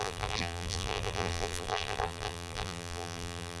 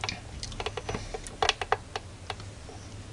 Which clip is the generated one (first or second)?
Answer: first